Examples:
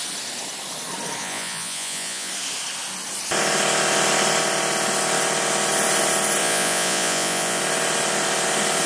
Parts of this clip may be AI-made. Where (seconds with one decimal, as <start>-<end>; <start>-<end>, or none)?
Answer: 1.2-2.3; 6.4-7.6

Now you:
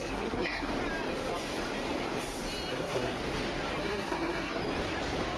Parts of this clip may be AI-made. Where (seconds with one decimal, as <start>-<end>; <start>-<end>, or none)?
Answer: 0.0-0.7; 2.7-3.2; 3.8-4.6

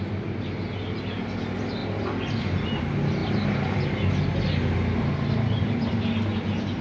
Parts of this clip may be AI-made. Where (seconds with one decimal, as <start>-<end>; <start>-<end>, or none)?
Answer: none